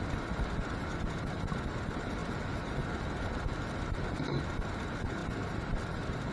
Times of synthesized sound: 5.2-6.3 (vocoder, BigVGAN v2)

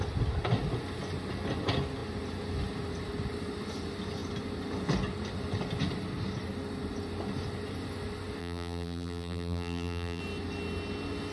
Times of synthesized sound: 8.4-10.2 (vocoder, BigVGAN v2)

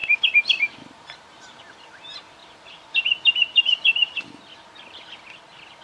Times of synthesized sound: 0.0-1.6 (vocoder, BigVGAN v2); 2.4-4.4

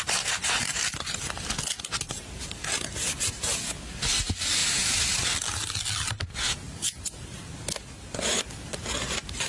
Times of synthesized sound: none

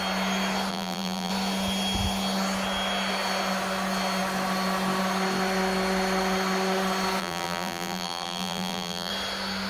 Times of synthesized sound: 0.7-1.3 (vocoder, BigVGAN v2); 7.2-9.1